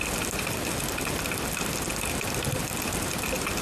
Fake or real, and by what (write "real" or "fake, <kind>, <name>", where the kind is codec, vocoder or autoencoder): real